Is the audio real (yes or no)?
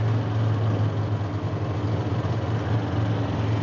yes